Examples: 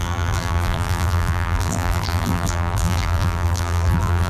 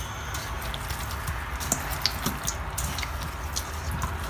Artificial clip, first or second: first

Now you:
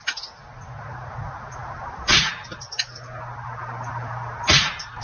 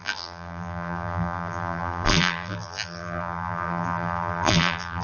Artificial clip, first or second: second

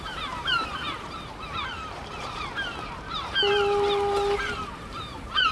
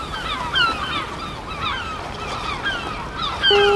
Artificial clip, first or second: first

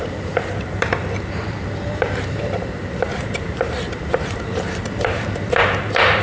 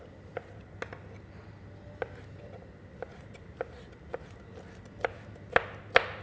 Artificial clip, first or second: first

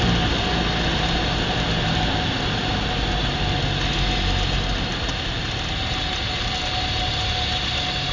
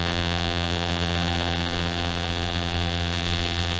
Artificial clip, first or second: second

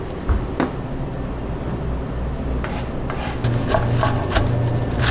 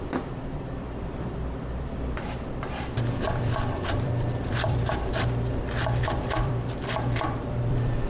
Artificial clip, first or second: second